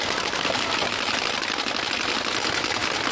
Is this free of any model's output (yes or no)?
yes